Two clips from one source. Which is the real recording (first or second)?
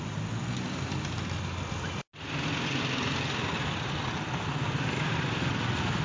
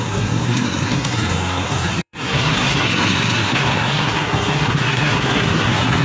first